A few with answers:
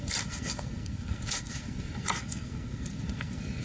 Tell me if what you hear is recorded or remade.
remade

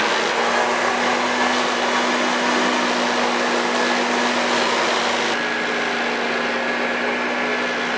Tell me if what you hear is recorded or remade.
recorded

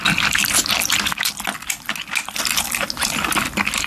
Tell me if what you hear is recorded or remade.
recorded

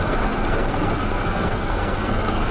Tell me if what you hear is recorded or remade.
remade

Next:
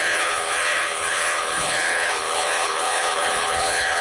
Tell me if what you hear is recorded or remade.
remade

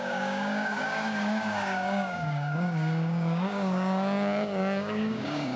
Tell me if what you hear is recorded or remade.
remade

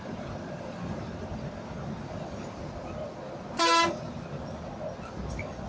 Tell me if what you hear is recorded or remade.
recorded